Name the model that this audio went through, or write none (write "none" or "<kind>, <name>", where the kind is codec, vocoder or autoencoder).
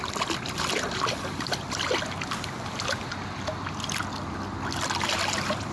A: none